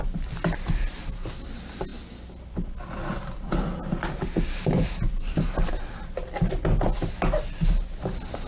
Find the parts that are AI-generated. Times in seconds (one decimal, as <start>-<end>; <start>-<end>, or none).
none